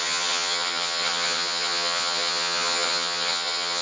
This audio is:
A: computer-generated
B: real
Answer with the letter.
A